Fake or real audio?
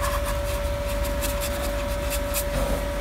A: real